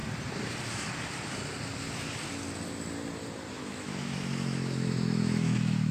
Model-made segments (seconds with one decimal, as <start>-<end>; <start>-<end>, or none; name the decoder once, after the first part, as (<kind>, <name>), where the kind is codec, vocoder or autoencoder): 3.5-5.9 (autoencoder, DAC-VAE)

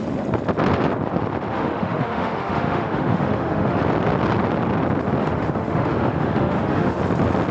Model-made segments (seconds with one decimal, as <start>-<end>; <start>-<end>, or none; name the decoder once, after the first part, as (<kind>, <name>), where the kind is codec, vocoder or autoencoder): 1.5-3.8 (autoencoder, DAC-VAE); 5.2-7.0

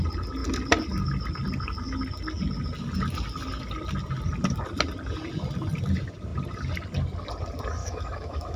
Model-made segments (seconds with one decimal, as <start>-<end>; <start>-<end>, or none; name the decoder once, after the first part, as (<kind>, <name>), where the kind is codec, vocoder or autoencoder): 7.8-8.6 (autoencoder, DAC-VAE)

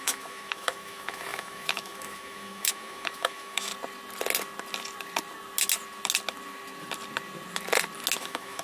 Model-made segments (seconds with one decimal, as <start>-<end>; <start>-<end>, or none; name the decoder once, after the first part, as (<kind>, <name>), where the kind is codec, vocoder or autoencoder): 0.0-3.7 (autoencoder, DAC-VAE); 8.2-8.6

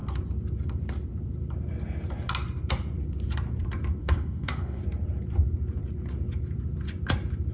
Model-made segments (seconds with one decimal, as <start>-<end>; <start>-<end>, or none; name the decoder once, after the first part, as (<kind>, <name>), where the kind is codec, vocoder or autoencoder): 4.0-4.8 (autoencoder, DAC-VAE)